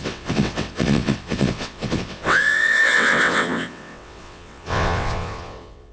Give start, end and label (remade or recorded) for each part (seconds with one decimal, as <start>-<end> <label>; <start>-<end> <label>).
0.0-5.9 remade